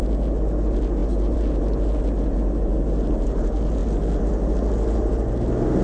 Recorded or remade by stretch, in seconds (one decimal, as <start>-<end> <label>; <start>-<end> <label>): 0.0-1.0 recorded; 1.0-1.6 remade; 1.6-5.8 recorded